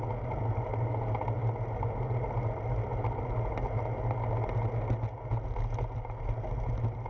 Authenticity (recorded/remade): recorded